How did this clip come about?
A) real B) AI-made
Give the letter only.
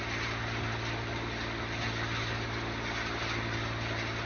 A